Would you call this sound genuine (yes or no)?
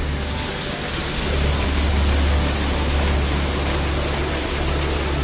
yes